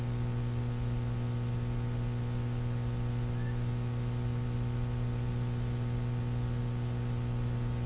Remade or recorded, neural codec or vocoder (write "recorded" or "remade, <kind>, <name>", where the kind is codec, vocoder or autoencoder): recorded